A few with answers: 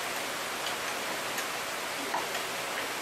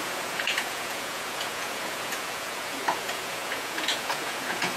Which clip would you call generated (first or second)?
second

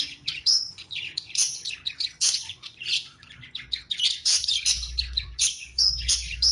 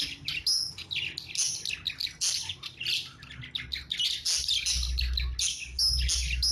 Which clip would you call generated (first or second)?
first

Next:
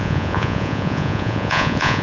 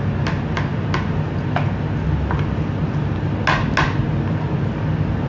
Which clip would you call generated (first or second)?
first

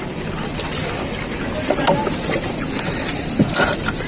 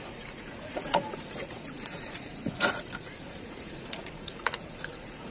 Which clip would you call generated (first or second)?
second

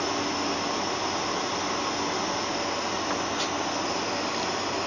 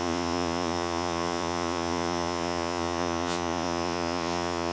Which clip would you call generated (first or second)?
second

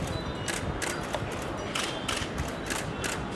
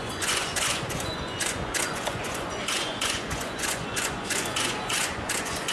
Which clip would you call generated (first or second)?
second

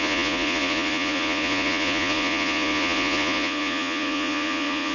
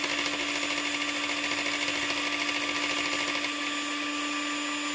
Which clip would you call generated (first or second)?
first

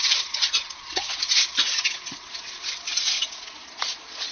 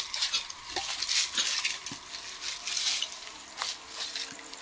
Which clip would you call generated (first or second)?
first